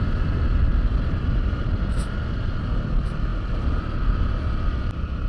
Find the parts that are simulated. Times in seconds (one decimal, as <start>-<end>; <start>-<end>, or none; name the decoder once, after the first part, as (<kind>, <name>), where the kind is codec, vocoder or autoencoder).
none